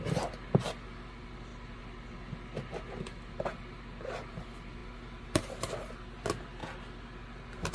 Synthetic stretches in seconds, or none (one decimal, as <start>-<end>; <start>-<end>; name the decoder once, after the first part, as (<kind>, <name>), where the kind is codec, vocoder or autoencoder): none